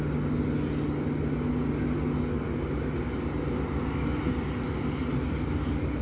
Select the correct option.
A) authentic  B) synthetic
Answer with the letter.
A